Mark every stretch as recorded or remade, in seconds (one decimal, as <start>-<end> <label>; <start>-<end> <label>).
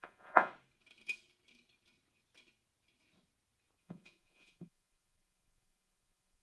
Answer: 0.0-0.5 remade; 0.5-3.8 recorded; 3.8-6.4 remade